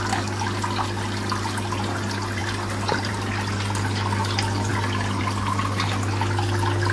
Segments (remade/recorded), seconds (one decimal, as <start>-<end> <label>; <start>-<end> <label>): 0.0-6.9 recorded